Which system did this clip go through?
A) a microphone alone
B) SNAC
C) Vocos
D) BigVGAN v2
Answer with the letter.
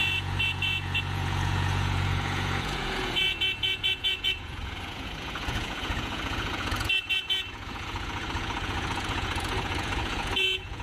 C